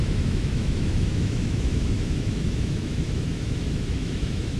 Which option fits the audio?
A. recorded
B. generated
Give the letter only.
B